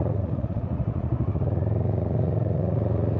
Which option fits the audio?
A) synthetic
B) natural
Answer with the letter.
A